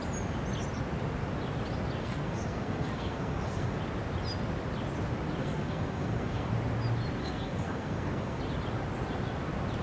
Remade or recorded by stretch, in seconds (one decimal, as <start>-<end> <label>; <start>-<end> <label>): 0.0-2.0 recorded; 2.0-3.8 remade; 3.8-5.4 recorded; 5.4-6.5 remade; 6.5-7.2 recorded; 7.2-8.4 remade; 8.4-9.8 recorded